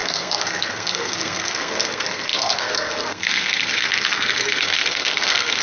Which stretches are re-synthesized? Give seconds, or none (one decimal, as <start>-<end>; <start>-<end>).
0.0-5.6